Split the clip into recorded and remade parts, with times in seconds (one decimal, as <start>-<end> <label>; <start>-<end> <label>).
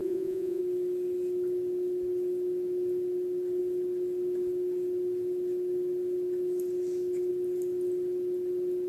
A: 0.0-0.6 remade; 0.6-8.9 recorded